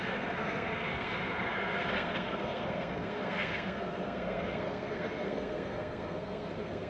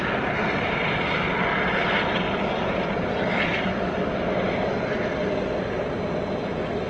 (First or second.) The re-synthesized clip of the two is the first